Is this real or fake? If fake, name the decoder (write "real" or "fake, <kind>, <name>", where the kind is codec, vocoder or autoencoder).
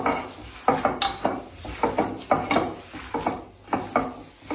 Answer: real